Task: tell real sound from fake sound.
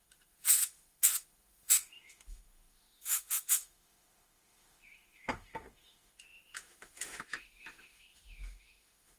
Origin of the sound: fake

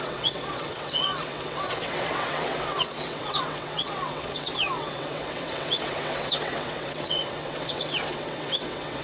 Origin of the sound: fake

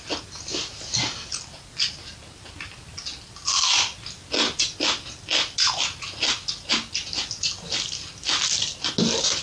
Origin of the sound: real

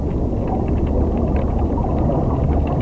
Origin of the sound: real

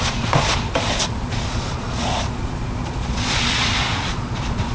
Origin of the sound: fake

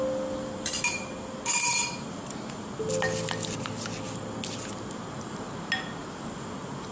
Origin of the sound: real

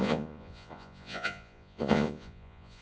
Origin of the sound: fake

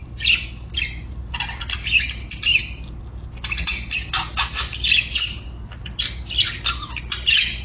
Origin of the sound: real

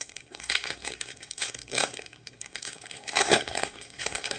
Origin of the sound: fake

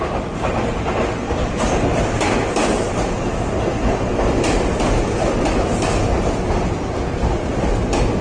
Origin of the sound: real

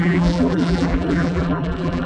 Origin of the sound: fake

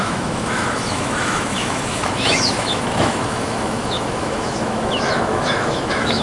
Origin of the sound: fake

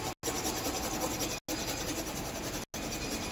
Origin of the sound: real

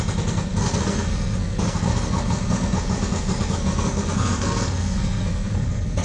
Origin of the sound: fake